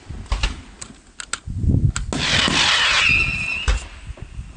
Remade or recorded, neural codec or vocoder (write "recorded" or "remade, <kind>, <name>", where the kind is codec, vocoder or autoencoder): recorded